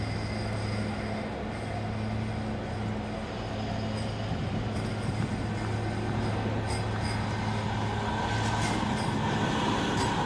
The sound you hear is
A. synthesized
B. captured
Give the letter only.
B